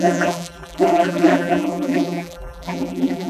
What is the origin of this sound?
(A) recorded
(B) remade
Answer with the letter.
B